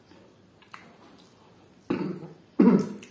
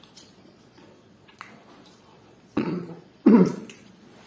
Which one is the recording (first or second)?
first